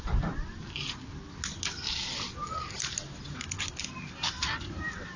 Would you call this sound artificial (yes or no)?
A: no